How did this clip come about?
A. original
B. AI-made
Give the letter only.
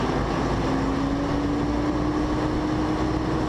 A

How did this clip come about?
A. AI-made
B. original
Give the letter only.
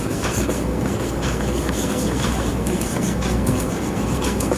A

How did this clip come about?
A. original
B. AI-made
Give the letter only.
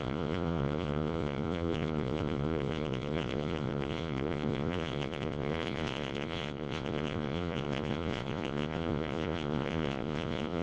B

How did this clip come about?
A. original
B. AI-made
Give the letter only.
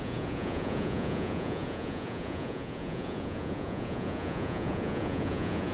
B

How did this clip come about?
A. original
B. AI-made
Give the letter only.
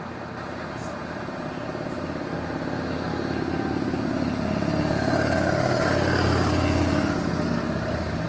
A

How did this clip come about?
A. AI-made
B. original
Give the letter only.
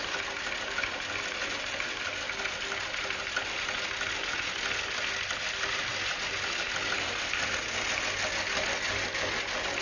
B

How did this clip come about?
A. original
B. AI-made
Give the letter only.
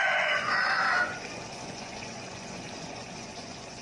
B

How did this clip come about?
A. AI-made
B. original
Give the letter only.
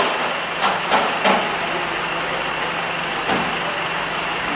B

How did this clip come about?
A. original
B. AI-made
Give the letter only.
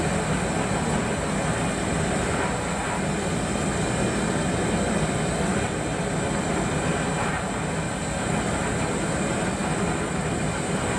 A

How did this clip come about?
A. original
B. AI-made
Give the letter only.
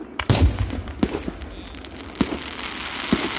A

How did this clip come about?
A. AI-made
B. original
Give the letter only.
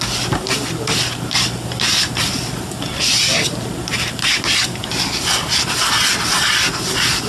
B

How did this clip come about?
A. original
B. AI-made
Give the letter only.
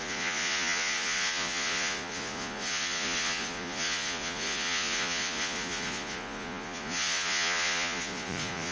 B